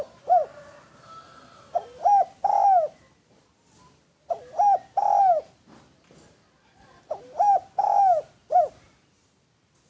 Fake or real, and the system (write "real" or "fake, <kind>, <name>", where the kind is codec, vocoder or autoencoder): real